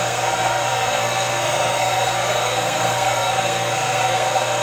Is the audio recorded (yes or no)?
no